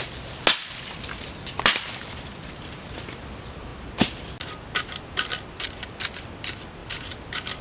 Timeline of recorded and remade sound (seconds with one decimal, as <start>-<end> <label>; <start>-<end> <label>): 0.0-7.6 recorded